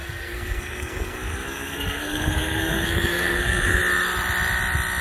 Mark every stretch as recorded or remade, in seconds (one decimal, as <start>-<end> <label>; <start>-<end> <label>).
0.0-3.8 remade; 3.8-5.0 recorded